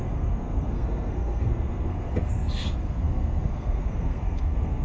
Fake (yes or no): yes